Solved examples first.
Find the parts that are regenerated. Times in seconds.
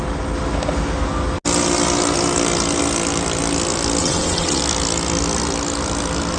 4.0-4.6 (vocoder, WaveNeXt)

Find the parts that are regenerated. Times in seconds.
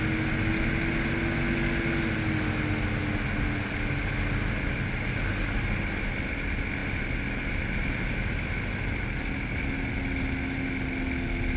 none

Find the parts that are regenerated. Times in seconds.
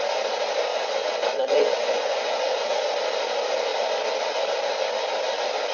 0.7-2.8 (vocoder, WaveNeXt)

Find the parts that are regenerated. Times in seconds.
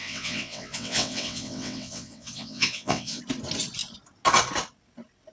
0.0-3.2 (vocoder, WaveNeXt)